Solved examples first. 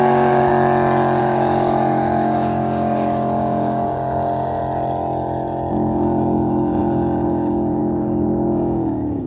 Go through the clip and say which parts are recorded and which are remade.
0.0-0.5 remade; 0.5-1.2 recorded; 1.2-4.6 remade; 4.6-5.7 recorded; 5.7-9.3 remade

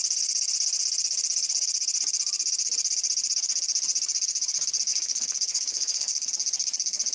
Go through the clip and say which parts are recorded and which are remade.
0.0-4.9 recorded; 4.9-6.3 remade; 6.3-7.1 recorded

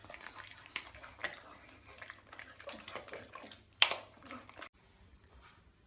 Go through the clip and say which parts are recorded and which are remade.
0.0-5.9 recorded

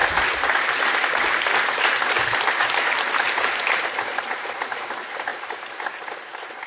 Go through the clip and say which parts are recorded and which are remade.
0.0-5.3 recorded; 5.3-6.1 remade; 6.1-6.7 recorded

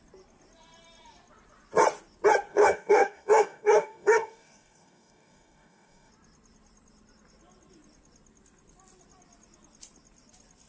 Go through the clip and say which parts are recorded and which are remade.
0.0-2.5 recorded; 2.5-6.1 remade; 6.1-10.7 recorded

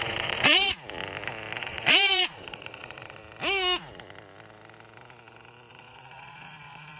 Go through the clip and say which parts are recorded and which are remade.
0.0-0.7 remade; 0.7-1.6 recorded; 1.6-3.2 remade; 3.2-5.7 recorded; 5.7-7.0 remade